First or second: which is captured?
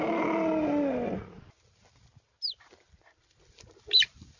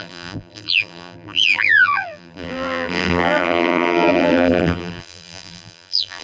first